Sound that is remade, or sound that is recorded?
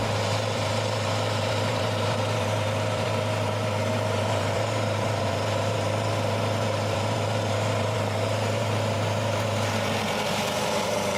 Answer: remade